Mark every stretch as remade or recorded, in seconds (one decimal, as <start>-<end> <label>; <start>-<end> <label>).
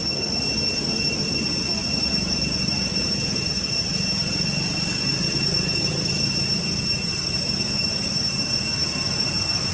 0.0-5.1 recorded; 5.1-8.1 remade; 8.1-9.7 recorded